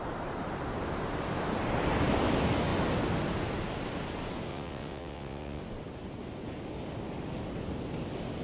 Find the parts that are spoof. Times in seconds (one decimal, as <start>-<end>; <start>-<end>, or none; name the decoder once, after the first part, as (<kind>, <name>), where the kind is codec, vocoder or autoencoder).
4.5-5.6 (vocoder, WaveNeXt)